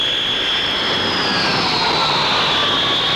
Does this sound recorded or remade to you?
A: recorded